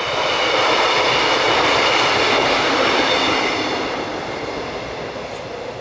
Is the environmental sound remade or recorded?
recorded